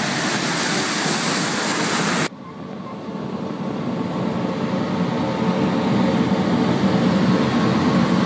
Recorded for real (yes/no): yes